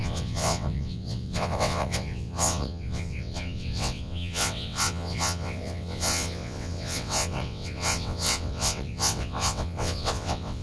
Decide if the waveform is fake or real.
fake